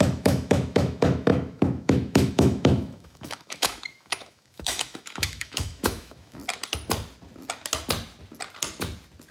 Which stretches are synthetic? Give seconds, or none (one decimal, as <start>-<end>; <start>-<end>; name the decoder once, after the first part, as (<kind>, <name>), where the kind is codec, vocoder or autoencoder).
0.0-6.4 (autoencoder, DAC-VAE)